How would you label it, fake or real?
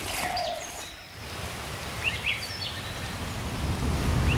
real